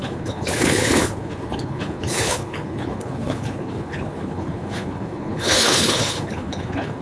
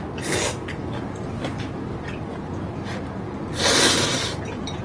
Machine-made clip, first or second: first